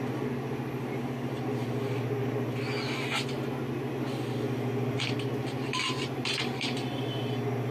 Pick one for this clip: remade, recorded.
recorded